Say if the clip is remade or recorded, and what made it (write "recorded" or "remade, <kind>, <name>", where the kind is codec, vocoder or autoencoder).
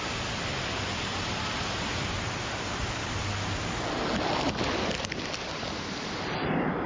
recorded